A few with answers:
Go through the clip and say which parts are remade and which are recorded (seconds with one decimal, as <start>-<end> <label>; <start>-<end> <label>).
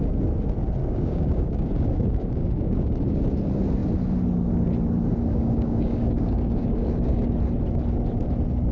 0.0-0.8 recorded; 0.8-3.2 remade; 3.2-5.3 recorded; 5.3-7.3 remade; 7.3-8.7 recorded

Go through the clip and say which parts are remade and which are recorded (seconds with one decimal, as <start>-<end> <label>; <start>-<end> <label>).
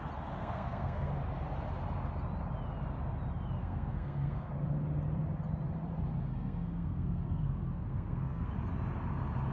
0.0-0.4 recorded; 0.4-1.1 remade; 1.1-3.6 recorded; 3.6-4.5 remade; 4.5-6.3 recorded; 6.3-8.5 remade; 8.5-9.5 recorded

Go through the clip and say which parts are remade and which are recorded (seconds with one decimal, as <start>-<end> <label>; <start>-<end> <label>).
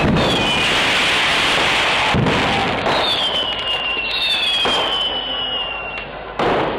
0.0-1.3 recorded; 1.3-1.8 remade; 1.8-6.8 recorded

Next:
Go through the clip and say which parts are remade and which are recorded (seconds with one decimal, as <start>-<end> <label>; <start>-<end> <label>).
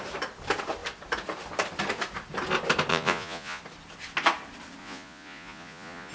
0.0-2.9 recorded; 2.9-3.6 remade; 3.6-4.8 recorded; 4.8-6.1 remade